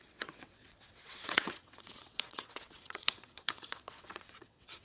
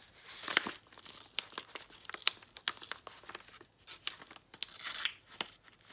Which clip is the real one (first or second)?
second